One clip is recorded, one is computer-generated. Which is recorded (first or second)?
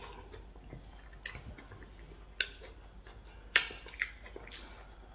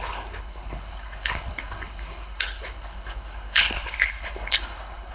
first